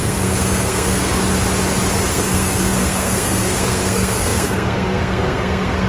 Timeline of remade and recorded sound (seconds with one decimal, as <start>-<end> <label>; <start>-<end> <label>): 0.0-1.2 remade; 1.2-2.1 recorded; 2.1-5.9 remade